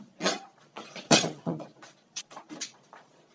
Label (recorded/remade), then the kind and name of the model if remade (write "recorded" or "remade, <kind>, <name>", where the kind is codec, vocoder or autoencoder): remade, vocoder, Vocos